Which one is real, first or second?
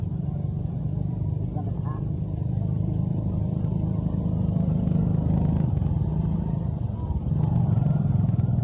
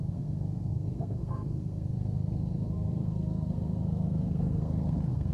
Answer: first